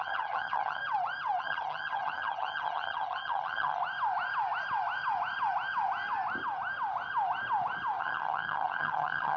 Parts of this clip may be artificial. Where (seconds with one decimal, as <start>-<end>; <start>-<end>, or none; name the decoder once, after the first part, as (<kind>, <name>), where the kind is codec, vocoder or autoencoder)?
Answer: 0.0-0.8 (vocoder, HiFi-GAN); 1.4-3.8; 8.0-9.4